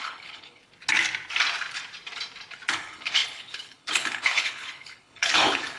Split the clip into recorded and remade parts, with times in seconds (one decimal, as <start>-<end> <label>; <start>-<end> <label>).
0.0-0.6 remade; 0.6-2.7 recorded; 2.7-5.8 remade